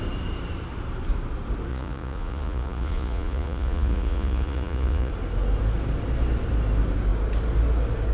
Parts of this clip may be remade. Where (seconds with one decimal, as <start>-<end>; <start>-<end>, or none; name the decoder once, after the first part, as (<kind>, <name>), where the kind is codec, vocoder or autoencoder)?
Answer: 1.7-5.1 (vocoder, Vocos)